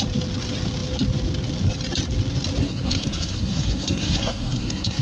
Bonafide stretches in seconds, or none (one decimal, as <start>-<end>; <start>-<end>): 0.0-2.6